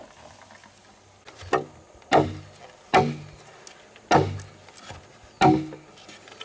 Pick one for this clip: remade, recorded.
recorded